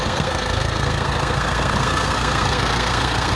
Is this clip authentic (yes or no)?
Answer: no